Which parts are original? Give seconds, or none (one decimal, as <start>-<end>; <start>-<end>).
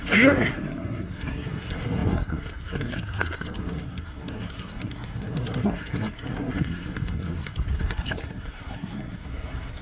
none